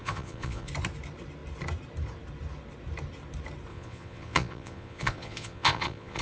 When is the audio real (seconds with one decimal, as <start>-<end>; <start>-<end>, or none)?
0.7-3.7